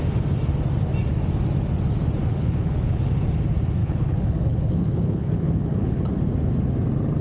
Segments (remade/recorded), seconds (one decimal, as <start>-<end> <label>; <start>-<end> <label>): 0.0-2.3 recorded; 2.3-3.1 remade; 3.1-3.8 recorded; 3.8-6.1 remade; 6.1-7.2 recorded